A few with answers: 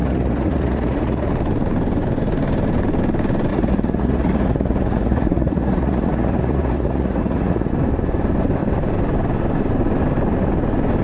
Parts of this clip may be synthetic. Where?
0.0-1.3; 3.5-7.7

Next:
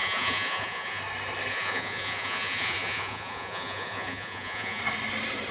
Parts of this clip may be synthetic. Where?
0.0-1.0; 1.5-4.8

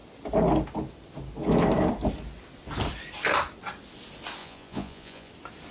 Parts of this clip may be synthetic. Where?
4.4-5.3

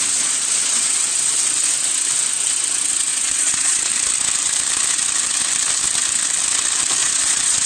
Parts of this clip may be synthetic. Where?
3.1-3.9; 7.0-7.7

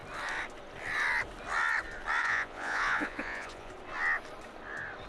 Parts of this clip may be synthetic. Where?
2.2-3.7